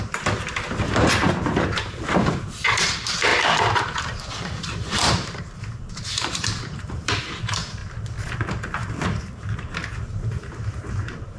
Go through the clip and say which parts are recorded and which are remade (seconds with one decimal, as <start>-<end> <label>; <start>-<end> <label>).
0.0-7.8 remade; 7.8-9.2 recorded; 9.2-11.4 remade